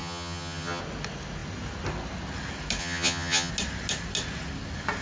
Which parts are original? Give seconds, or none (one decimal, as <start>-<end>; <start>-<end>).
0.8-2.8; 3.5-5.0